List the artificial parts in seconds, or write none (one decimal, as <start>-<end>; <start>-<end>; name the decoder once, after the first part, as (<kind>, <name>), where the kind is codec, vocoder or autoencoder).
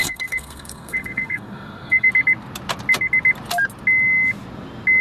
0.0-2.1 (codec, SNAC)